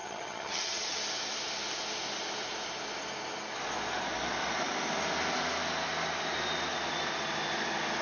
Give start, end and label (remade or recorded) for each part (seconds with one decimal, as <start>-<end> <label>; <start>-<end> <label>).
0.0-1.0 remade; 1.0-8.0 recorded